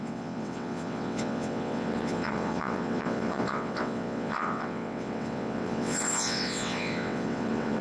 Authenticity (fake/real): fake